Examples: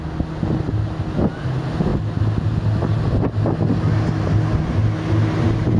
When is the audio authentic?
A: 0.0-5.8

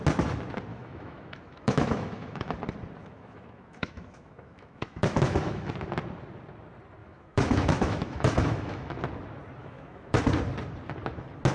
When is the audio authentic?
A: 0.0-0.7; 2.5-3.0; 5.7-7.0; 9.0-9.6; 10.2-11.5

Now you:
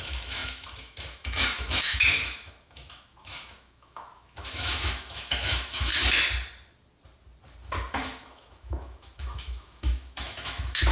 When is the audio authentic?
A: 5.9-7.9